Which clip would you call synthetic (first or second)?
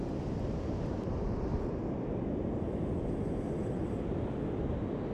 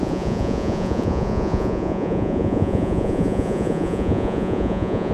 second